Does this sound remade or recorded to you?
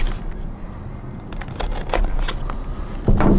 recorded